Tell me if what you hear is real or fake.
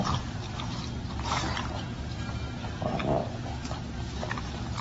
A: real